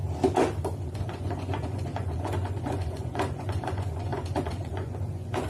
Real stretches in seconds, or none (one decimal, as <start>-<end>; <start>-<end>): 0.0-0.8